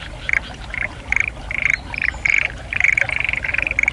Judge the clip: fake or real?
real